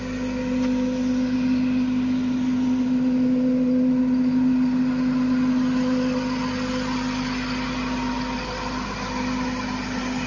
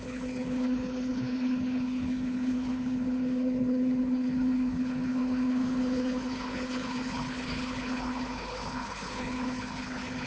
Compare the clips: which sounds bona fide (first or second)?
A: first